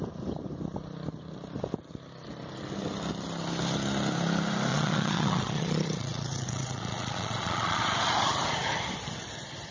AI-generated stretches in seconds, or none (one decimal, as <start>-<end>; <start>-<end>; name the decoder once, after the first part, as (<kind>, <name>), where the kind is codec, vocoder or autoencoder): 4.7-7.8 (vocoder, Vocos)